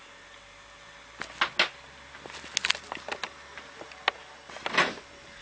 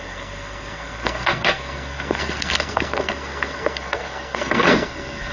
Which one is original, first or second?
first